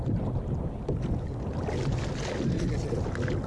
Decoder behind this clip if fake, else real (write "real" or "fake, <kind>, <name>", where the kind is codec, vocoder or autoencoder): real